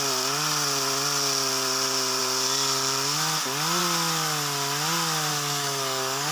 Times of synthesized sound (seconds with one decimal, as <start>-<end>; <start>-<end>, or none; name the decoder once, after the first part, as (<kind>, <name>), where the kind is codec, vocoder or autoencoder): 5.3-6.3 (codec, DAC)